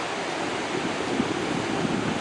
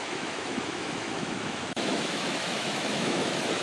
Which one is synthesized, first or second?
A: second